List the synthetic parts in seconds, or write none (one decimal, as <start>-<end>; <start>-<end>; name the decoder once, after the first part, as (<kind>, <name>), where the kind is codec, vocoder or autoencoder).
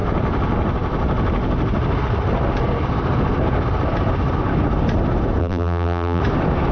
5.4-6.2 (vocoder, BigVGAN v2)